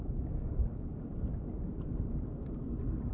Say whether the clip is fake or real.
real